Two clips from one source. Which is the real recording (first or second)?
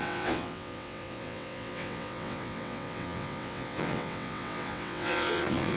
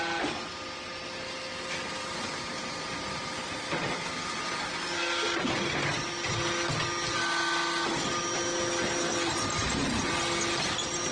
second